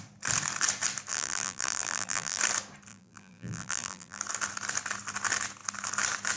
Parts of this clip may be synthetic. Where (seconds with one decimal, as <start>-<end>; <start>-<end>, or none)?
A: 1.1-2.4; 2.9-4.2